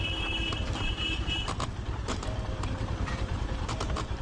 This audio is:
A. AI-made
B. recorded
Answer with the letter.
A